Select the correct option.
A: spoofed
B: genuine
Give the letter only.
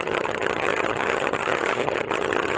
A